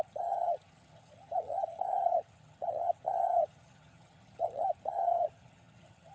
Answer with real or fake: fake